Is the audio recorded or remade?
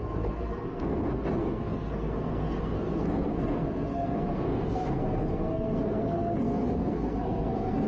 remade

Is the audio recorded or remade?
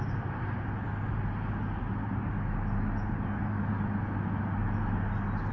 recorded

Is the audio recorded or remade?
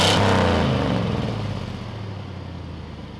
recorded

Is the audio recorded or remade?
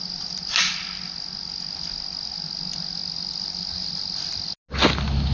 recorded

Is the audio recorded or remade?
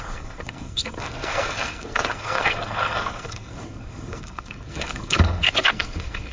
remade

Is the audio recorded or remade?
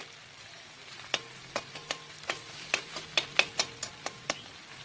recorded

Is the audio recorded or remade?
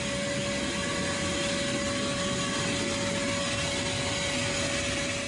recorded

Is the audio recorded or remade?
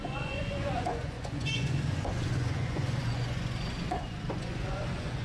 remade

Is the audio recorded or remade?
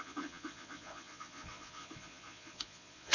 remade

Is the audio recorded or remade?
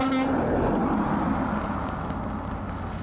recorded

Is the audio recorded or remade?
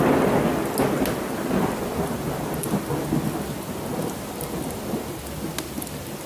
recorded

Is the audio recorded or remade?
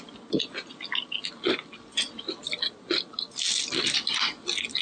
recorded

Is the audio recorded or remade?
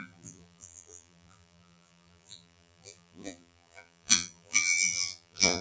remade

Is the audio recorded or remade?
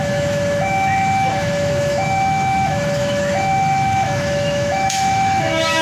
remade